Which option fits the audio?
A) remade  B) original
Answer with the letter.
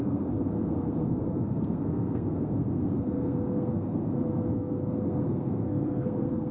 A